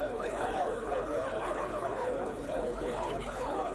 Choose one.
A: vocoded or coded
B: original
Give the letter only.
A